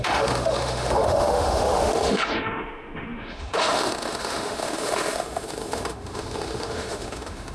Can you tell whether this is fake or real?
fake